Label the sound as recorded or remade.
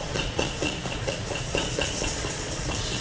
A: remade